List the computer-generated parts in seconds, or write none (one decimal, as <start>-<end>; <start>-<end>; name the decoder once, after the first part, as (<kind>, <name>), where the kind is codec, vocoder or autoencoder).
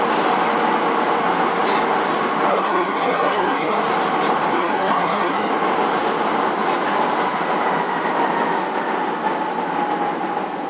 2.5-3.8 (codec, SNAC); 4.5-5.5